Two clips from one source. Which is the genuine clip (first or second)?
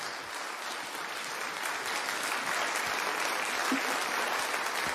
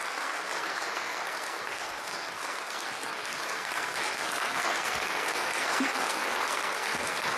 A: first